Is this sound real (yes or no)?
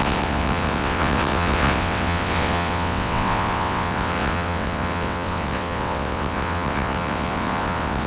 no